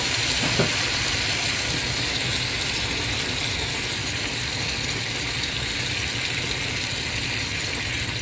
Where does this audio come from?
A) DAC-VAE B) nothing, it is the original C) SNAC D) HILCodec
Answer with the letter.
B